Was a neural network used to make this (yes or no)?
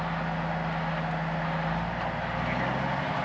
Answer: no